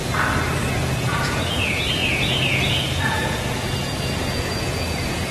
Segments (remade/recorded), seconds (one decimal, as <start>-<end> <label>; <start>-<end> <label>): 0.0-0.9 recorded; 0.9-5.3 remade

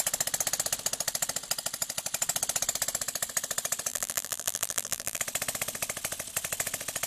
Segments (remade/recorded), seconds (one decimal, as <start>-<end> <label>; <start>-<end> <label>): 0.0-3.9 recorded; 3.9-5.2 remade; 5.2-7.1 recorded

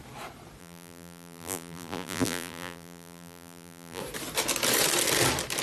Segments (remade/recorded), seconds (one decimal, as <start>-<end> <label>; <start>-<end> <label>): 0.0-0.6 recorded; 0.6-4.0 remade; 4.0-5.6 recorded

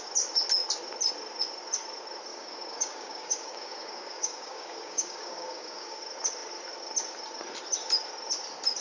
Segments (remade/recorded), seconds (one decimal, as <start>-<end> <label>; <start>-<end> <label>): 0.0-2.3 recorded; 2.3-6.0 remade; 6.0-8.8 recorded

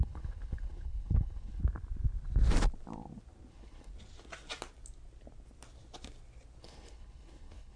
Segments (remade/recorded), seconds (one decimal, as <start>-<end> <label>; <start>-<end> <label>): 0.0-1.6 remade; 1.6-3.5 recorded; 3.5-3.9 remade; 3.9-6.6 recorded; 6.6-7.8 remade

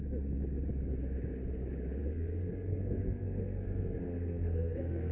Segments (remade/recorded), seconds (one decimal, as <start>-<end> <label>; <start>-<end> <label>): 0.0-2.0 recorded; 2.0-5.1 remade

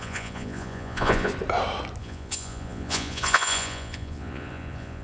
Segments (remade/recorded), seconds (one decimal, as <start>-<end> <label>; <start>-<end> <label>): 0.0-1.3 remade; 1.3-2.0 recorded; 2.0-5.0 remade

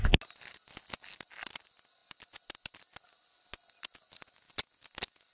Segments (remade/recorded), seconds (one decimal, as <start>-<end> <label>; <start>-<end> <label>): 0.0-5.3 recorded